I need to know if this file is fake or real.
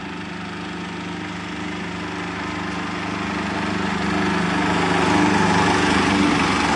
real